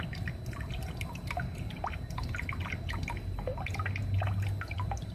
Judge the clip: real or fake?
real